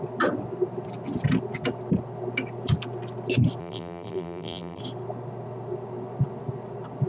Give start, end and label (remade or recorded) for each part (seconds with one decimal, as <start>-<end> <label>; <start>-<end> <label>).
0.0-3.6 recorded; 3.6-4.8 remade; 4.8-7.1 recorded